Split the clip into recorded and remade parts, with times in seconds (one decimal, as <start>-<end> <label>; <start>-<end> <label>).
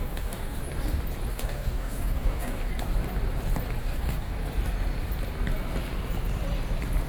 0.0-0.6 remade; 0.6-1.3 recorded; 1.3-2.7 remade; 2.7-3.8 recorded; 3.8-4.3 remade; 4.3-7.1 recorded